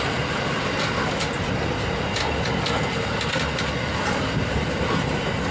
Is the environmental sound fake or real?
real